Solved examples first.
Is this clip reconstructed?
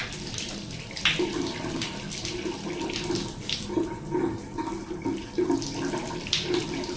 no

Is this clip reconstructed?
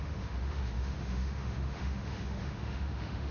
yes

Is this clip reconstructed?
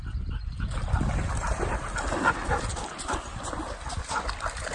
no